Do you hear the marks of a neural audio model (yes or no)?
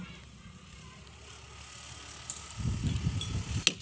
no